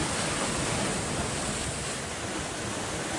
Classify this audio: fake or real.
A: real